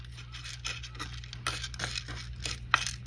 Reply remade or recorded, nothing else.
recorded